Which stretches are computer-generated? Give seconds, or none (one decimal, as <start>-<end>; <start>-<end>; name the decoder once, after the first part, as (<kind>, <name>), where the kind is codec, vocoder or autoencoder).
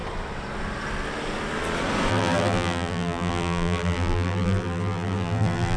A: 2.1-5.8 (vocoder, BigVGAN v2)